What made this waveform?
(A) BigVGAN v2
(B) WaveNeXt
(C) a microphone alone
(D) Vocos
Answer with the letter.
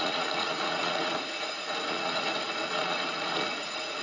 D